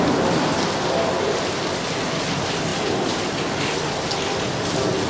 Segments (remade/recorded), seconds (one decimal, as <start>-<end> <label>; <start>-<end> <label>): 0.0-5.1 recorded